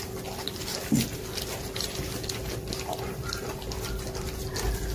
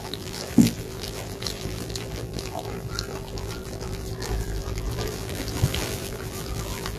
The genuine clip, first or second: first